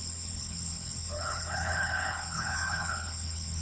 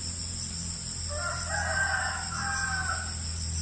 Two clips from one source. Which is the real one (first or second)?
second